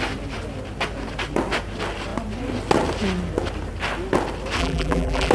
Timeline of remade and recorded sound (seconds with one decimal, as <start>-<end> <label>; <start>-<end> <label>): 0.0-4.6 recorded; 4.6-5.3 remade